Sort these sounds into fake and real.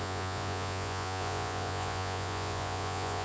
fake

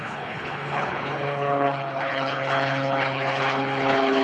fake